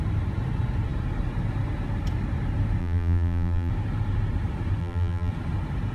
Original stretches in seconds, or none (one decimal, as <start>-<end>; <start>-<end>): 0.0-2.8; 3.7-4.8; 5.3-5.9